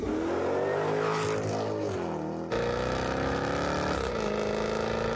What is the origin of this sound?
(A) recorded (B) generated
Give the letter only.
A